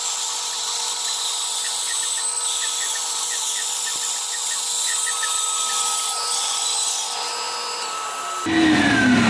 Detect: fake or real real